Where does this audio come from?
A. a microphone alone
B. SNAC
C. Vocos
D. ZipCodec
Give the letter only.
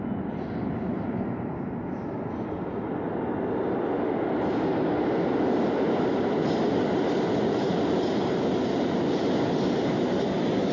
A